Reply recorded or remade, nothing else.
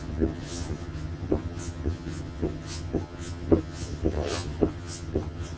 remade